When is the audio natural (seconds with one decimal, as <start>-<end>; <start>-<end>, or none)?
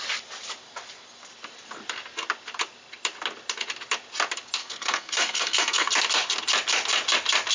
0.0-4.6; 5.9-7.5